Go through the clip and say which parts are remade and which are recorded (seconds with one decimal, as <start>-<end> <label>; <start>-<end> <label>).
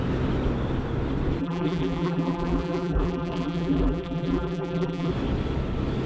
0.0-1.4 recorded; 1.4-5.1 remade; 5.1-6.1 recorded